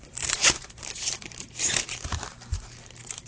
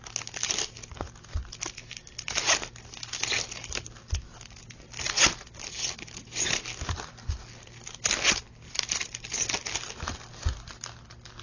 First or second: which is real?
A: second